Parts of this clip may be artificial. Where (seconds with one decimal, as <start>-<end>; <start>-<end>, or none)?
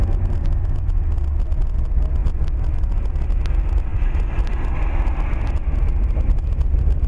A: none